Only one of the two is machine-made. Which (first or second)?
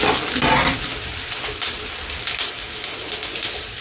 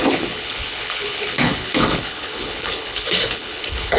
second